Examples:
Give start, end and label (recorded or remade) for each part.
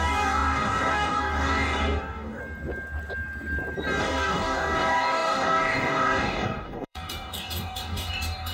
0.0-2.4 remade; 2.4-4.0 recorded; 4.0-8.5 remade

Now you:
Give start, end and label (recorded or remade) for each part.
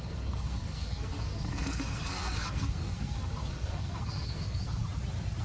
0.0-4.8 remade; 4.8-5.4 recorded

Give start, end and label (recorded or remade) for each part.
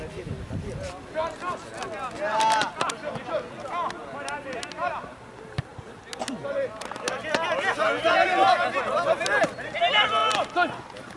0.0-11.2 recorded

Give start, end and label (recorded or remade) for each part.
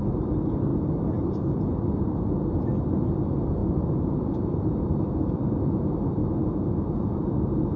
0.0-3.6 recorded; 3.6-5.7 remade; 5.7-7.8 recorded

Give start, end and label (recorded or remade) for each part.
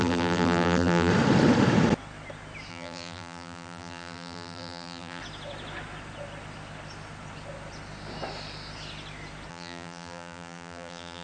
0.0-1.1 remade; 1.1-2.7 recorded; 2.7-5.2 remade; 5.2-9.5 recorded; 9.5-11.2 remade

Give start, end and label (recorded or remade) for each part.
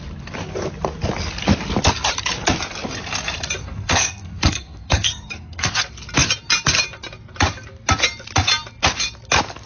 0.0-3.6 recorded; 3.6-5.8 remade; 5.8-9.7 recorded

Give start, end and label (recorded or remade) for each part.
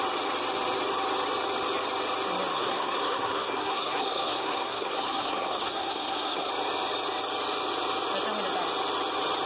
0.0-2.5 recorded; 2.5-6.5 remade; 6.5-9.5 recorded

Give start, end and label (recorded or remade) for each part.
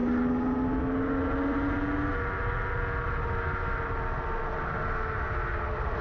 0.0-6.0 recorded